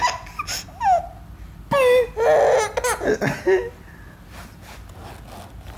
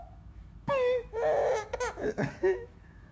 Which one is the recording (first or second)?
first